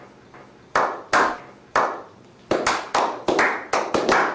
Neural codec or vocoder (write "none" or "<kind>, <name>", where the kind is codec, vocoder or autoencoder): none